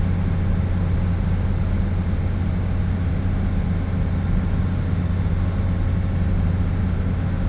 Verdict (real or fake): real